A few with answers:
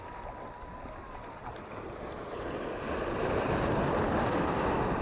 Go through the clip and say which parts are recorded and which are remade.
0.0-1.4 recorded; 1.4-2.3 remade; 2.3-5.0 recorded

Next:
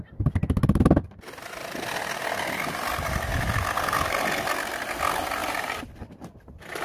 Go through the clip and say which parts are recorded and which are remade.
0.0-3.3 recorded; 3.3-5.0 remade; 5.0-5.4 recorded; 5.4-6.1 remade; 6.1-6.8 recorded

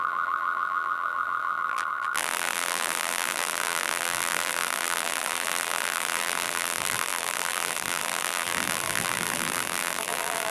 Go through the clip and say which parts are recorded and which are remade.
0.0-10.5 remade

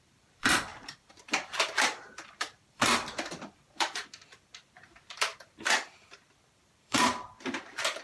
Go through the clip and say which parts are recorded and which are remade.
0.0-8.0 remade

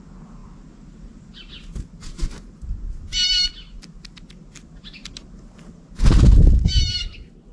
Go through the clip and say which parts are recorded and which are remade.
0.0-7.5 recorded

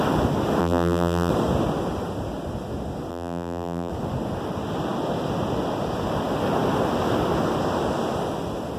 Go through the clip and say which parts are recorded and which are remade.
0.0-0.6 recorded; 0.6-1.3 remade; 1.3-3.1 recorded; 3.1-3.9 remade; 3.9-8.8 recorded